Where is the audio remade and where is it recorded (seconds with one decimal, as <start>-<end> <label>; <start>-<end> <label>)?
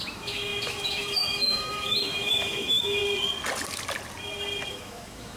0.0-3.0 remade; 3.0-4.7 recorded; 4.7-5.4 remade